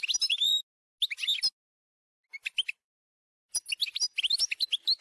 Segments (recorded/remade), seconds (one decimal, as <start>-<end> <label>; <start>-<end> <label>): 0.0-5.0 recorded